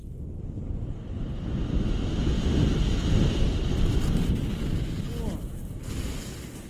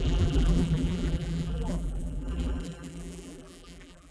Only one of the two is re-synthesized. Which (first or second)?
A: second